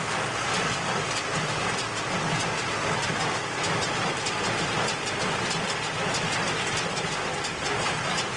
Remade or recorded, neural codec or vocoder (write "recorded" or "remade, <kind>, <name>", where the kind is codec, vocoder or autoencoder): recorded